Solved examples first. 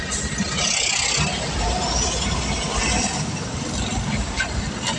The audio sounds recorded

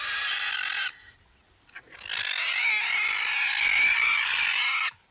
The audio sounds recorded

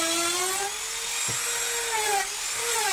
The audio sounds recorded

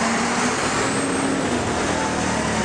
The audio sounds recorded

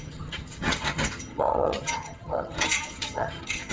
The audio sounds remade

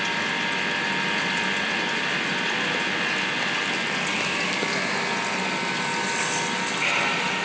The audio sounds recorded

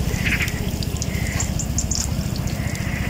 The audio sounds recorded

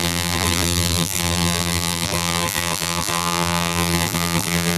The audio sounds remade